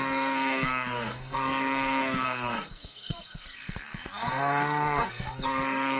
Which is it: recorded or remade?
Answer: remade